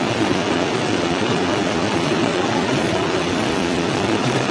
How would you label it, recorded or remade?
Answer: remade